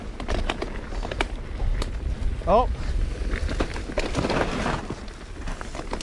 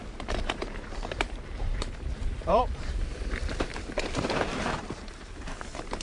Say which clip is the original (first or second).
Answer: first